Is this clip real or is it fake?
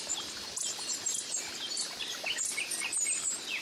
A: fake